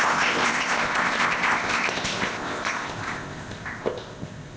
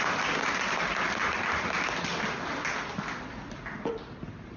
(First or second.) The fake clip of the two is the first